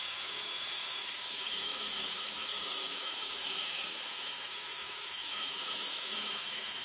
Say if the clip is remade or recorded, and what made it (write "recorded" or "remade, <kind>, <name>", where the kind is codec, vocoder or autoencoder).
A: remade, autoencoder, DAC-VAE